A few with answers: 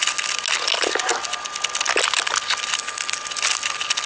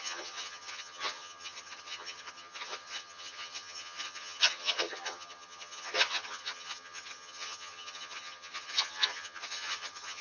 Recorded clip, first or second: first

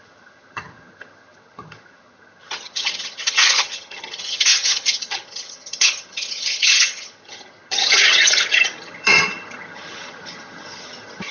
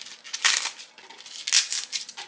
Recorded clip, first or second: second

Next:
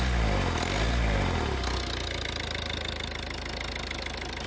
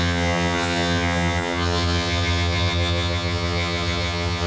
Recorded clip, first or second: first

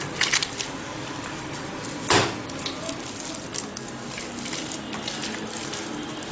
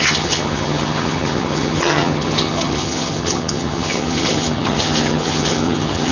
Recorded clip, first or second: first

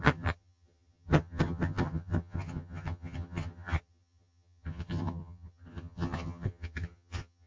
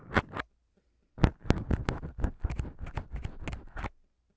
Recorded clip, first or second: second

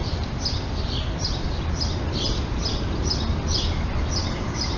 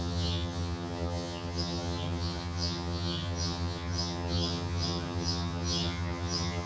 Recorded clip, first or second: first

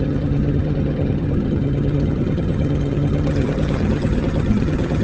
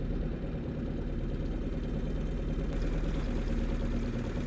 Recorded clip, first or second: second